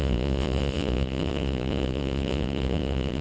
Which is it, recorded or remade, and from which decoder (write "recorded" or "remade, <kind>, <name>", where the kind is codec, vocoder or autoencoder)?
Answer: remade, vocoder, Vocos